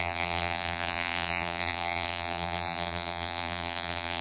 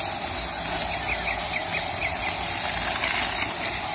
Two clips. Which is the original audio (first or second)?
second